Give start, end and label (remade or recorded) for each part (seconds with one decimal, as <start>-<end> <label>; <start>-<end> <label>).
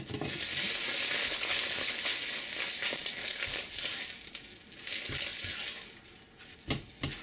0.0-1.2 recorded; 1.2-2.2 remade; 2.2-3.2 recorded; 3.2-3.8 remade; 3.8-7.2 recorded